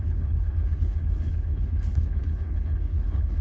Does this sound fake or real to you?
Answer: fake